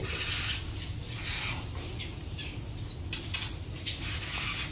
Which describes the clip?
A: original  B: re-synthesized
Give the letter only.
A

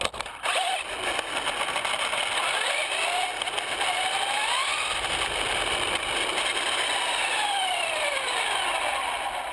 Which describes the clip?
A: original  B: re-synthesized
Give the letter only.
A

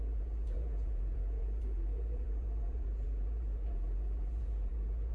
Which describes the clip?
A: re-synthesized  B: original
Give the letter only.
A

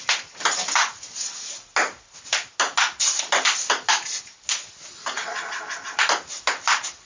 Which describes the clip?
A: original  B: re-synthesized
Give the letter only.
A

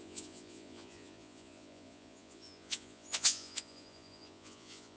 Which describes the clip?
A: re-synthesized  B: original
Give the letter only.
A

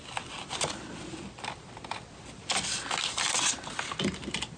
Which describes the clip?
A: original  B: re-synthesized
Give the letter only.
A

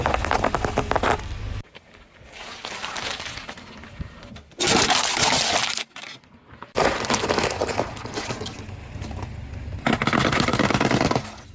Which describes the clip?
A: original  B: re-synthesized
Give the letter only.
A